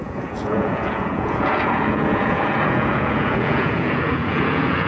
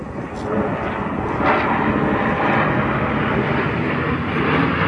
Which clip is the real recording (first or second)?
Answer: second